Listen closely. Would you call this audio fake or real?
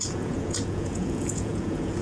fake